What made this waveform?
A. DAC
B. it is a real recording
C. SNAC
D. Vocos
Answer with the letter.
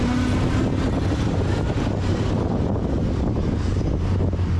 B